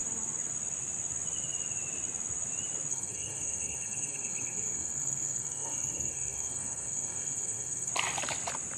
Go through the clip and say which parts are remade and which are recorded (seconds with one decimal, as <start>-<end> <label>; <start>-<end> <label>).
0.0-2.9 recorded; 2.9-7.9 remade; 7.9-8.8 recorded